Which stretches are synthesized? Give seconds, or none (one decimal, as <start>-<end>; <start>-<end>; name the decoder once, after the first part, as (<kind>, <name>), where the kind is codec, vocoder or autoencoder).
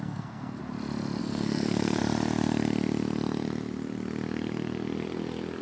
0.0-0.6 (codec, SNAC); 1.2-2.0